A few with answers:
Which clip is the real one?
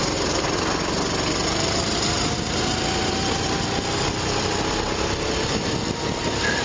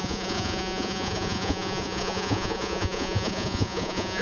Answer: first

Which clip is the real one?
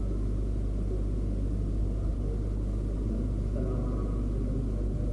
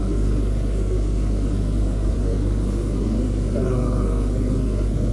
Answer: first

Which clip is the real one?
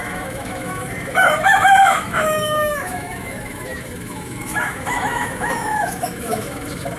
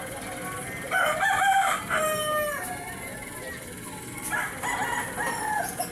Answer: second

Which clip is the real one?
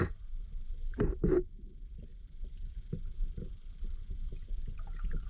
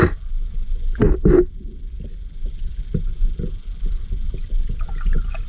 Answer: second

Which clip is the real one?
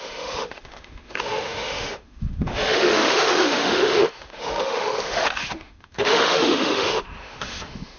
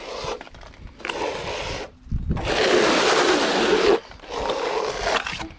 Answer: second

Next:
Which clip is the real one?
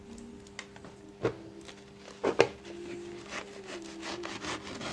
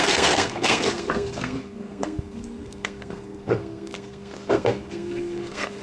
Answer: first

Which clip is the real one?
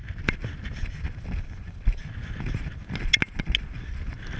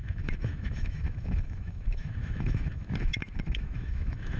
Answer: first